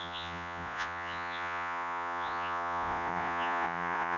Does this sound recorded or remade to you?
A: remade